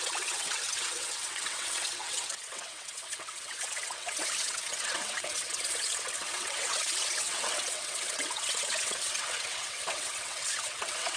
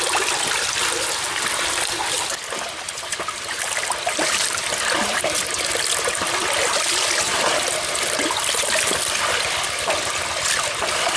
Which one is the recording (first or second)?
second